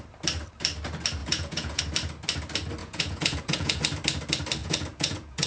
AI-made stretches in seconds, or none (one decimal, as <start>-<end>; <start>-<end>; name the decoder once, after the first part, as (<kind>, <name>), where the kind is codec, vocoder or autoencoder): 1.2-1.8 (vocoder, Vocos); 2.8-3.8; 4.6-5.5